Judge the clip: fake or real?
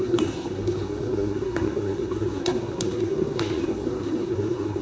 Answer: fake